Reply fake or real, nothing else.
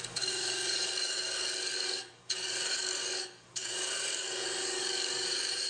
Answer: fake